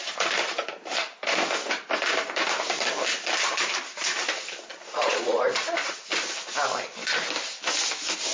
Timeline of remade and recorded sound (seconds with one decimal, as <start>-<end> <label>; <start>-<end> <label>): 0.0-4.7 recorded; 4.7-5.9 remade; 5.9-8.3 recorded